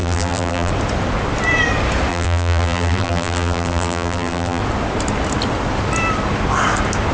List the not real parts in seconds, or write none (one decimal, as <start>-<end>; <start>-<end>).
0.0-0.7; 2.1-4.6